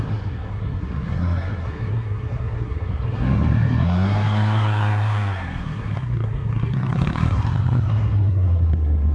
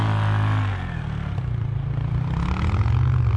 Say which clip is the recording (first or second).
second